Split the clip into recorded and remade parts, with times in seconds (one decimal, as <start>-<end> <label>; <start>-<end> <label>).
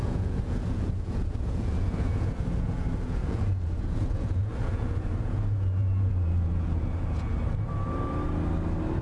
0.0-7.3 remade; 7.3-9.0 recorded